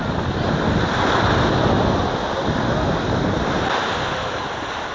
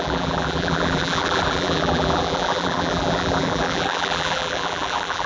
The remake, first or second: second